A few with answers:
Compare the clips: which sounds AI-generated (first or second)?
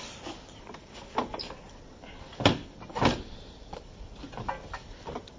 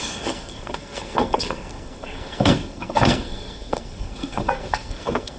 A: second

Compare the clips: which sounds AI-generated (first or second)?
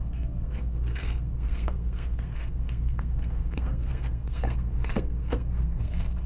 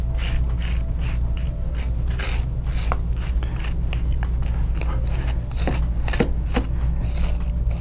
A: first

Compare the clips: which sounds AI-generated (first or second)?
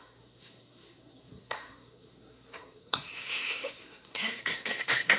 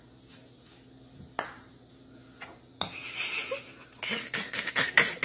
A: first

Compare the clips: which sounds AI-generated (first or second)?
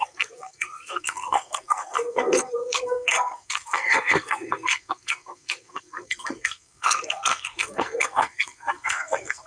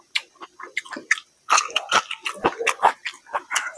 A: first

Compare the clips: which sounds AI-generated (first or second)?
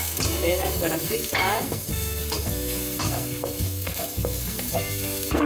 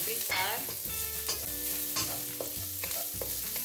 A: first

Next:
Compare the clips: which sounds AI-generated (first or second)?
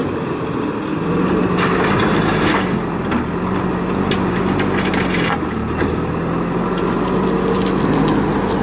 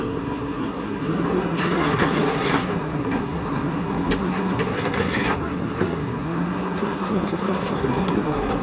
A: second